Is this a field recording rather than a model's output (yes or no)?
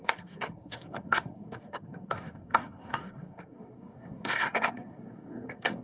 no